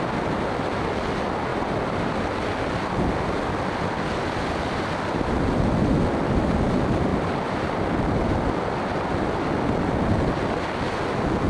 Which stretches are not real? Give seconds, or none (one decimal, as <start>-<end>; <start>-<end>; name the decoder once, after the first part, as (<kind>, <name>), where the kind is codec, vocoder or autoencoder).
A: 1.5-2.8 (vocoder, BigVGAN v2); 7.1-8.3